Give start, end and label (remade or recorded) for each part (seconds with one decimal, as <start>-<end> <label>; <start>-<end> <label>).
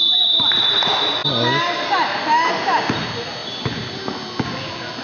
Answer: 0.0-5.0 recorded